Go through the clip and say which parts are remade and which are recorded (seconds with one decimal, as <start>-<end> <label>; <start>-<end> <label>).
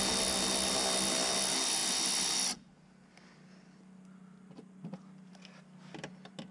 0.0-6.5 recorded